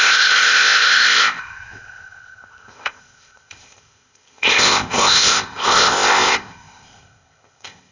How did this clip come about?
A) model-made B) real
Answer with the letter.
A